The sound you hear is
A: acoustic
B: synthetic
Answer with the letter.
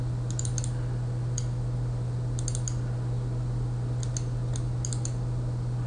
A